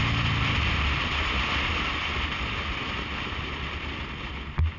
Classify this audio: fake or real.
real